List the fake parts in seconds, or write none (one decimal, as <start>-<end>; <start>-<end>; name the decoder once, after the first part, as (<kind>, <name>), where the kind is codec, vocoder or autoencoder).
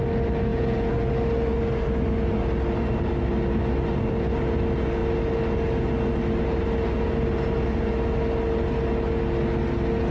0.5-1.1 (vocoder, Vocos)